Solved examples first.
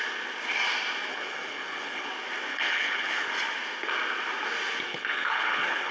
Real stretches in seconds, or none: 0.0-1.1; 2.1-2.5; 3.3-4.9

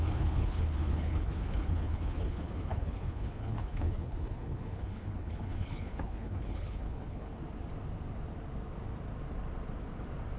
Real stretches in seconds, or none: 7.3-10.4

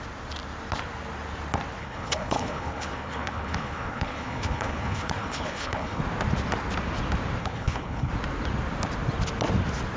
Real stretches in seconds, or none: 0.0-1.8; 6.0-7.4; 8.1-10.0

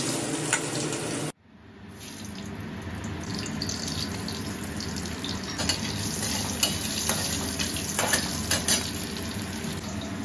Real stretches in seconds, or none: 0.0-10.2

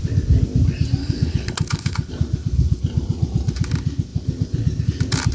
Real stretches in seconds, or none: 0.0-1.0; 2.1-5.3

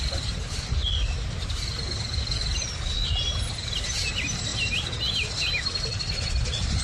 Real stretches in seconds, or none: 0.0-6.8

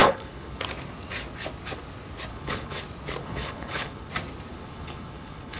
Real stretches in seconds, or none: 0.6-2.3; 2.8-3.2; 4.1-4.5